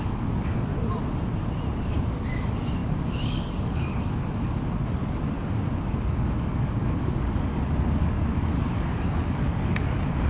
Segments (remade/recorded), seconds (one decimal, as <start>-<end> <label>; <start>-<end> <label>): 0.0-0.7 remade; 0.7-1.8 recorded; 1.8-5.0 remade; 5.0-5.8 recorded; 5.8-10.3 remade